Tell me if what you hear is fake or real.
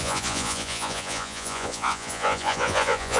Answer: fake